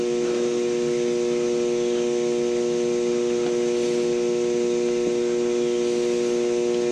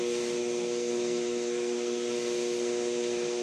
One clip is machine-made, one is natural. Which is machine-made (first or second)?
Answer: second